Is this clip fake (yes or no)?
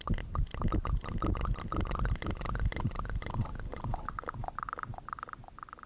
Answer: no